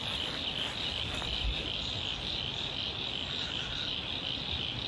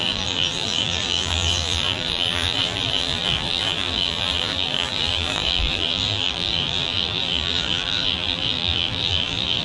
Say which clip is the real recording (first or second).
first